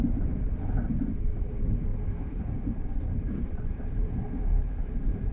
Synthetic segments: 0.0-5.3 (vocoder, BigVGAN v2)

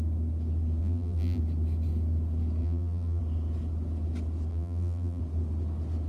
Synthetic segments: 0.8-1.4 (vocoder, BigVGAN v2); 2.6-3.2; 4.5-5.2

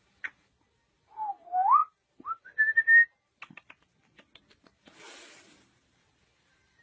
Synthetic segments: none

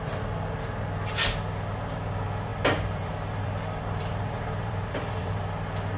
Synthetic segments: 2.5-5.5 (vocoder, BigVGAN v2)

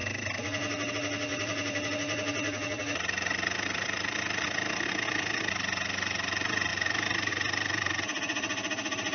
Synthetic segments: 1.3-1.9 (vocoder, BigVGAN v2); 6.7-7.3

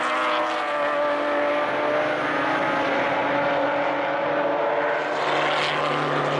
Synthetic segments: none

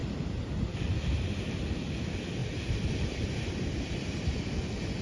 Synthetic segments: 0.0-1.4 (vocoder, BigVGAN v2); 2.4-5.0